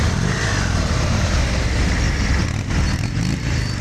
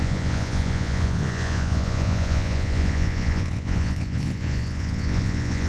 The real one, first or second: first